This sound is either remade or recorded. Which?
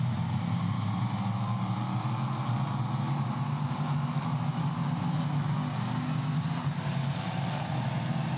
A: recorded